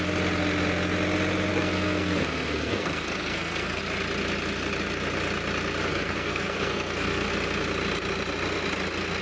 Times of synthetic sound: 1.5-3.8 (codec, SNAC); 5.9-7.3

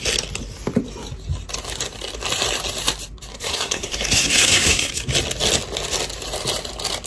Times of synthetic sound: 3.3-5.0 (codec, SNAC)

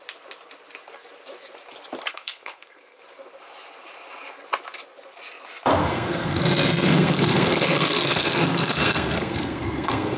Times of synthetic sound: 2.1-3.0 (codec, SNAC); 5.8-6.4; 6.9-10.2

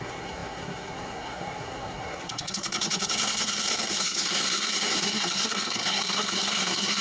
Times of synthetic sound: 0.0-7.0 (codec, SNAC)

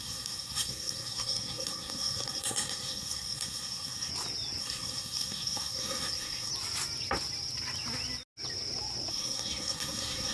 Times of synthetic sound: 0.0-4.1 (codec, SNAC); 4.6-6.5; 9.1-10.3

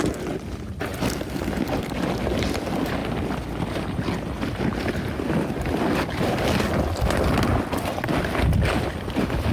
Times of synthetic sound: none